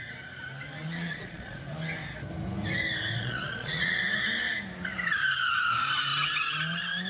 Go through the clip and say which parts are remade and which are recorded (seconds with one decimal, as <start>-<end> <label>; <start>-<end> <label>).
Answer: 0.0-0.8 recorded; 0.8-1.6 remade; 1.6-3.2 recorded; 3.2-4.0 remade; 4.0-7.1 recorded